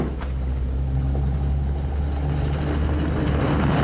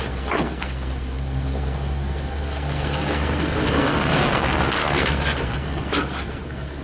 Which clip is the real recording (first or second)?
first